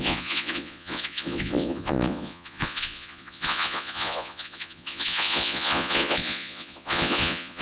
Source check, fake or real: fake